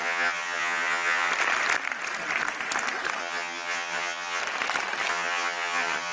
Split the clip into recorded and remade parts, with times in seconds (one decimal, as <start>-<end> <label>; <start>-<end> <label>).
0.0-1.3 remade; 1.3-3.2 recorded; 3.2-4.4 remade; 4.4-5.1 recorded; 5.1-6.1 remade